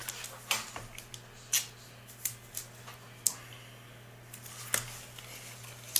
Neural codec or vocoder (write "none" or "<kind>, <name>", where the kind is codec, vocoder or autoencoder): none